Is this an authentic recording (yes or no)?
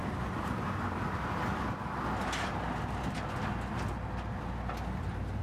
yes